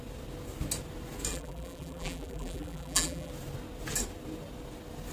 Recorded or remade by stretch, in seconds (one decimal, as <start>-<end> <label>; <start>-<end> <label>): 0.0-1.3 recorded; 1.3-3.3 remade; 3.3-5.1 recorded